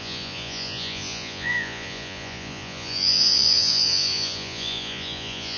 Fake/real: fake